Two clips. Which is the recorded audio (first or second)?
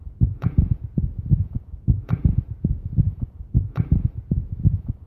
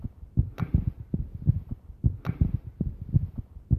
second